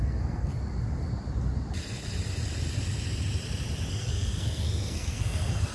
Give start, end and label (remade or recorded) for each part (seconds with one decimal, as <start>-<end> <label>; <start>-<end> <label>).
0.0-0.5 remade; 0.5-3.9 recorded; 3.9-5.7 remade